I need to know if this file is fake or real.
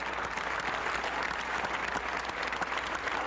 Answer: real